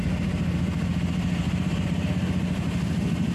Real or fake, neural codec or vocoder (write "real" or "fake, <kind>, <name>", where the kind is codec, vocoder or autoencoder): real